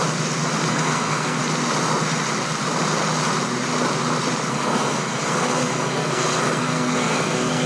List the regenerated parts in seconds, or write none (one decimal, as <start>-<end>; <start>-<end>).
0.7-1.4; 4.5-7.7